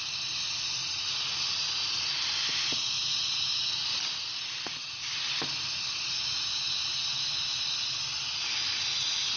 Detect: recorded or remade recorded